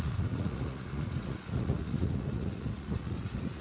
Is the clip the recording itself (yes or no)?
no